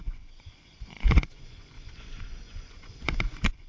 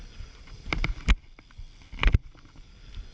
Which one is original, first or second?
second